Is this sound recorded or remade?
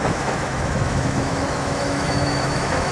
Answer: remade